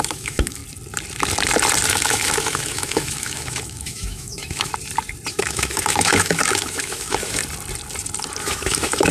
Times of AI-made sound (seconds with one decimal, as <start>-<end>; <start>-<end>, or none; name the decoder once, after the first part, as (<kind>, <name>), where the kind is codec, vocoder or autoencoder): 0.0-0.6 (autoencoder, DAC-VAE); 1.9-4.7; 5.3-7.4; 8.4-9.1